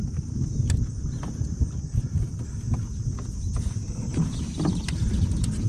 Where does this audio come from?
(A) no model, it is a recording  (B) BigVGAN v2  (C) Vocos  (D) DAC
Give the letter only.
A